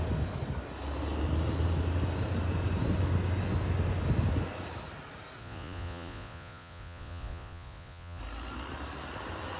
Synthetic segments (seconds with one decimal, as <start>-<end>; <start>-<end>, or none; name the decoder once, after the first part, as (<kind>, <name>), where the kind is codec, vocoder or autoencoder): 5.4-8.2 (vocoder, Vocos)